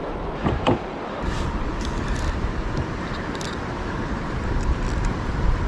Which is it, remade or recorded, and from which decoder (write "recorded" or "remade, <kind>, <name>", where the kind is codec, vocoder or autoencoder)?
remade, vocoder, BigVGAN v2